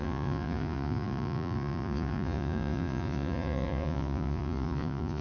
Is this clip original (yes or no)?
no